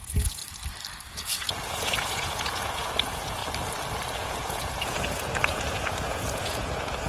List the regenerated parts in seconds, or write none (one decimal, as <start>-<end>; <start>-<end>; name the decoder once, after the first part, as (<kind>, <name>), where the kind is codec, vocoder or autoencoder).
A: 0.0-0.4 (vocoder, Vocos); 1.1-3.4; 4.2-7.1